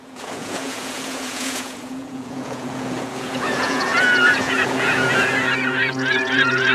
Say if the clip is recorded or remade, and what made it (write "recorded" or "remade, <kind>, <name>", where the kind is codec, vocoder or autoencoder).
remade, vocoder, Vocos